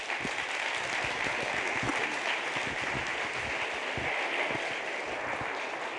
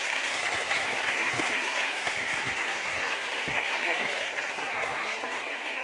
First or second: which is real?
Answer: first